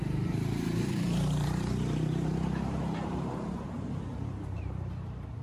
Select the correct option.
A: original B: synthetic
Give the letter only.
B